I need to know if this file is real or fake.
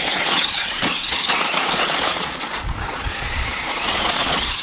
fake